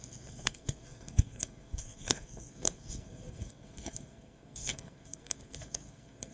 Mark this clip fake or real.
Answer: fake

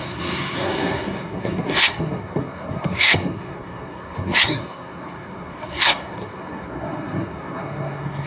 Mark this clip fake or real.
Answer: fake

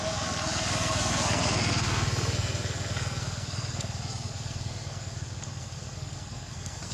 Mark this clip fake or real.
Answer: fake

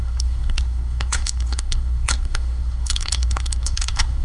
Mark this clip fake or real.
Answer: fake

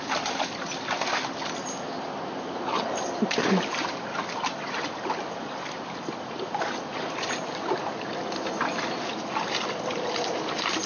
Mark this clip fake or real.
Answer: real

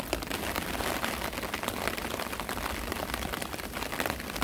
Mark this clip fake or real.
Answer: real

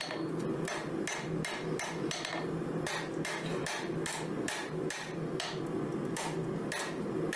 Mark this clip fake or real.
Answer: real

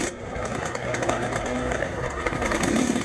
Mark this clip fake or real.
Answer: fake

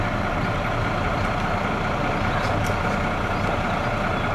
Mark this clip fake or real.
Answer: real